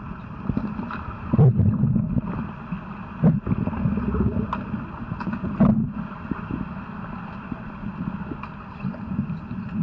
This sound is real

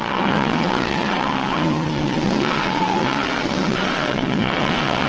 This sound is fake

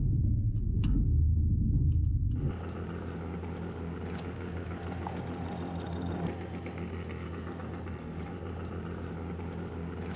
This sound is real